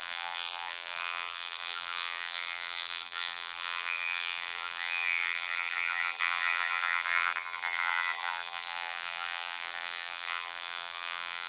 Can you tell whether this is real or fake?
fake